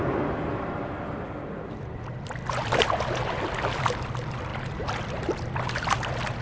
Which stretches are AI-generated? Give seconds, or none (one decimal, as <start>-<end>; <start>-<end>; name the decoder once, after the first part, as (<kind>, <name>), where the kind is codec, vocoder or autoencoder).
0.0-6.4 (vocoder, BigVGAN v2)